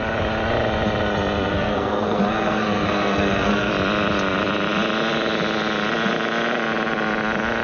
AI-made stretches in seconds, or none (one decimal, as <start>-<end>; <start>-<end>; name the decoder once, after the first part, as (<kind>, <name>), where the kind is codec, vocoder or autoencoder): 1.5-3.7 (codec, SNAC)